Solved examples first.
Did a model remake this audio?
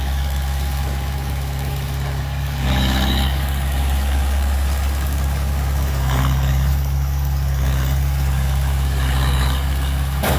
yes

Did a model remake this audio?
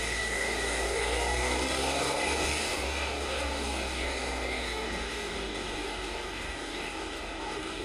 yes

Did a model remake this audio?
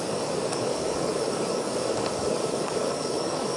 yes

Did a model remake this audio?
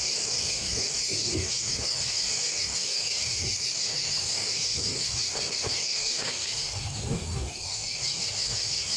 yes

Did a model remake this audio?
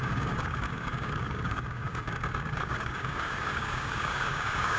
yes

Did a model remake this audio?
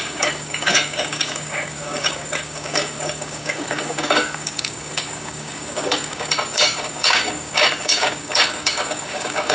yes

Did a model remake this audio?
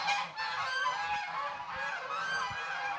no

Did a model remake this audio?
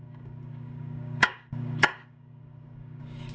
yes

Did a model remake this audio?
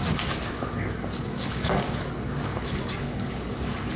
yes